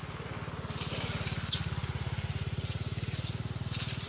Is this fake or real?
real